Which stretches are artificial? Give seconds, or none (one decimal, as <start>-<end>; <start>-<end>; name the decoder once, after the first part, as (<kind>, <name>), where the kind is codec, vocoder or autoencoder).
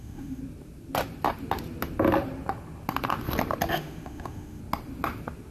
0.0-0.4 (autoencoder, DAC-VAE); 3.7-4.6